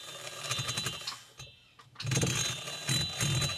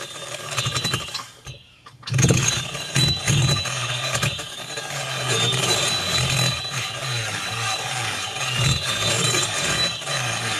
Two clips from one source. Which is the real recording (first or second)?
first